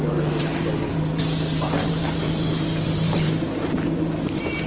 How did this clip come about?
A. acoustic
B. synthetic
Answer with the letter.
B